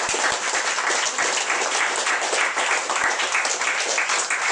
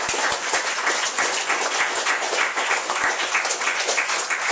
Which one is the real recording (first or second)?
first